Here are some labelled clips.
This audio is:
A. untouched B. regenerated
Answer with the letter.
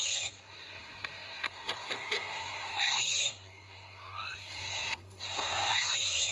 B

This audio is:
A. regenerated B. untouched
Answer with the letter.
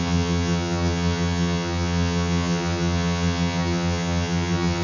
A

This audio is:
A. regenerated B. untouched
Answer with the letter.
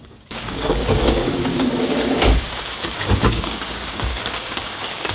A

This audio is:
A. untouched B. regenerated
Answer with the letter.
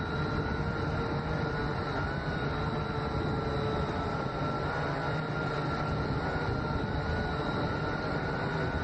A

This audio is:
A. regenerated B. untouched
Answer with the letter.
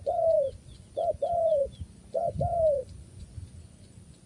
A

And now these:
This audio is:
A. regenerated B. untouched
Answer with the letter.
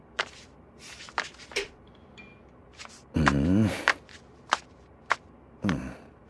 A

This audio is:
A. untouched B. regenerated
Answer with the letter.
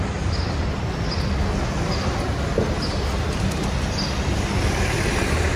A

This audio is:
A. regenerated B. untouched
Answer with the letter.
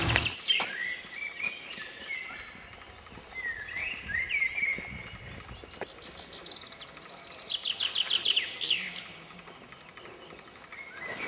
B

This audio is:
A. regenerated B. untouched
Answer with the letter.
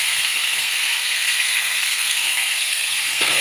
A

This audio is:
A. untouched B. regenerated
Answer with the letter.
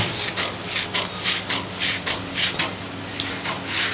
A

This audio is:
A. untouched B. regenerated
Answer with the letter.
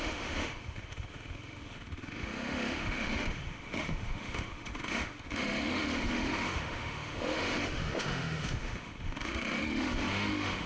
B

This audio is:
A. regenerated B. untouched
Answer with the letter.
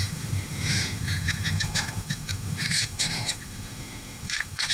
A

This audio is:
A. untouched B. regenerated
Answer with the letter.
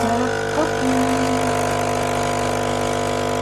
A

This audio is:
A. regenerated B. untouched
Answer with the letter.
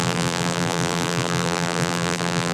A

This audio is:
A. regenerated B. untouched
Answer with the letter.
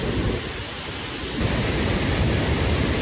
B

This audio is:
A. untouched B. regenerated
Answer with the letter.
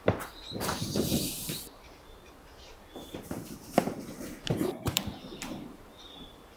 B